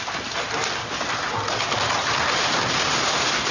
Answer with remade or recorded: recorded